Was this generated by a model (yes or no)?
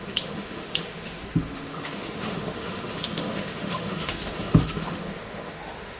yes